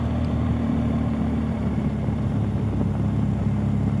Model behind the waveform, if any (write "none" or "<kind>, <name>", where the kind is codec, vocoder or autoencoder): vocoder, BigVGAN v2